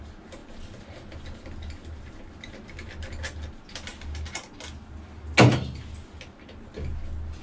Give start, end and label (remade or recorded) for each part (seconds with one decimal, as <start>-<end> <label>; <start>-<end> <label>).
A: 0.0-7.4 recorded